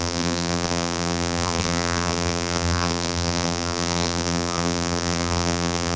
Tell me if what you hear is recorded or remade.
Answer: remade